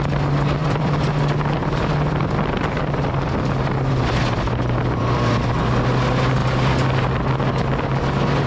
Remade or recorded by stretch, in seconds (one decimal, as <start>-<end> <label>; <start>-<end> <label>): 0.0-0.6 recorded; 0.6-1.1 remade; 1.1-1.6 recorded; 1.6-5.3 remade; 5.3-8.5 recorded

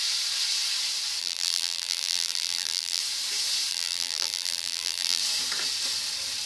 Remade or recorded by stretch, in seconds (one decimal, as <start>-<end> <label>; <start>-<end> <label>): 0.0-1.2 recorded; 1.2-3.0 remade; 3.0-3.7 recorded; 3.7-5.2 remade; 5.2-6.5 recorded

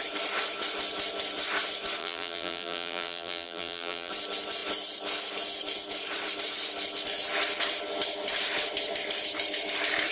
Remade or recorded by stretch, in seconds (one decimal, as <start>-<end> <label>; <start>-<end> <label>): 0.0-2.0 recorded; 2.0-4.1 remade; 4.1-10.1 recorded